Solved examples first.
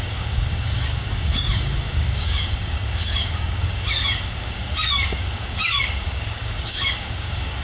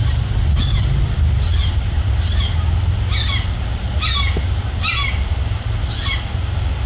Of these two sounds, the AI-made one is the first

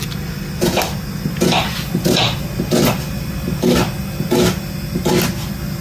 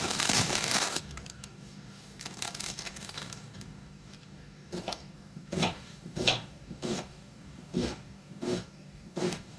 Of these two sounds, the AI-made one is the second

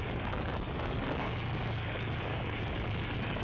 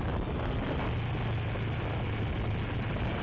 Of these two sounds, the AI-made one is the first